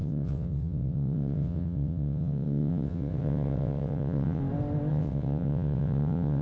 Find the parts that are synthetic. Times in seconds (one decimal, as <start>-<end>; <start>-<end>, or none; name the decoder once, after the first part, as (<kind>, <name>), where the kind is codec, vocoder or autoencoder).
0.0-4.4 (vocoder, WaveNeXt); 4.9-6.4

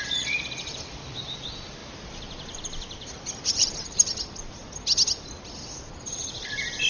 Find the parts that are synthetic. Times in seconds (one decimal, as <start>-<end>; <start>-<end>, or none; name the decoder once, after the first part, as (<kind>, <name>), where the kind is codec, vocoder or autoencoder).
0.0-1.8 (vocoder, BigVGAN v2); 2.6-4.6; 6.1-6.9

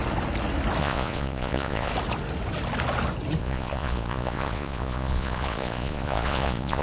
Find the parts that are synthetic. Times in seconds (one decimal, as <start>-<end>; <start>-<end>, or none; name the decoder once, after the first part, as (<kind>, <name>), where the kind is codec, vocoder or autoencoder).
0.8-1.9 (vocoder, Vocos); 3.4-6.8

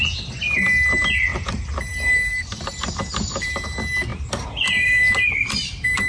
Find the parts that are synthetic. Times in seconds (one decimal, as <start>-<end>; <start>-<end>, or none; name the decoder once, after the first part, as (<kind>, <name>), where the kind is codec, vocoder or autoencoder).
1.3-2.9 (vocoder, BigVGAN v2); 4.1-6.1

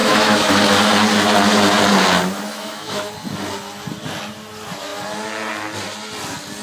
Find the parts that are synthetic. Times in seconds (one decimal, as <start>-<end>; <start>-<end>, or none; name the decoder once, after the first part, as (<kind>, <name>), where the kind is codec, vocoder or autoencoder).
0.0-0.5 (autoencoder, DAC-VAE); 2.5-3.1

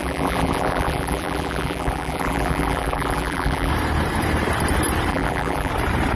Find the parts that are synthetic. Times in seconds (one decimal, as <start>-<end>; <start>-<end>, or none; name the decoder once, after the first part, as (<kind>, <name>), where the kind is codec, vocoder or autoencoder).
0.0-3.7 (vocoder, BigVGAN v2); 5.1-5.7

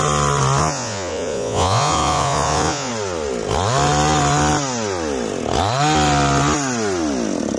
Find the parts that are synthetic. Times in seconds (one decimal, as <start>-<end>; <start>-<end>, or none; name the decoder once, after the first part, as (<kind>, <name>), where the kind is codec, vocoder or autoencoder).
0.6-2.9 (vocoder, Vocos)